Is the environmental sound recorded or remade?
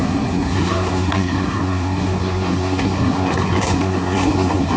remade